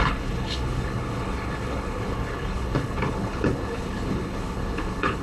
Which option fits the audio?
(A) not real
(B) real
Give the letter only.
A